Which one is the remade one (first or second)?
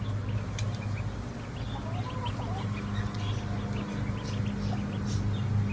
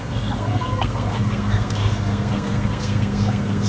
second